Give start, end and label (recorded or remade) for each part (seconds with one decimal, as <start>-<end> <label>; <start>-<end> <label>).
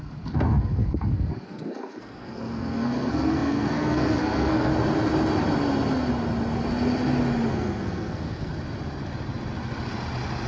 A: 0.0-4.7 remade; 4.7-7.5 recorded; 7.5-8.5 remade; 8.5-10.5 recorded